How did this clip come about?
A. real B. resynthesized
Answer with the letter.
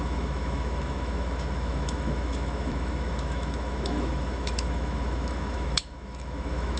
B